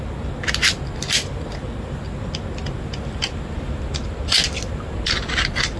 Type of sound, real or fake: real